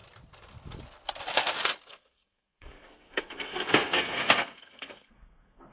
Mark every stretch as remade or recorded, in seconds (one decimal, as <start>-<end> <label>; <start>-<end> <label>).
0.0-1.9 recorded; 1.9-5.7 remade